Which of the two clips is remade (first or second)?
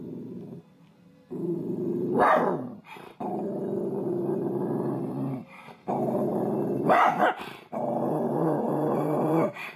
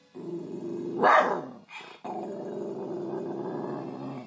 first